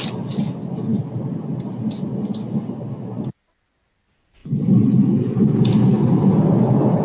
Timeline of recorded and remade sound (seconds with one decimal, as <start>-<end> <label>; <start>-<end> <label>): 0.0-7.0 recorded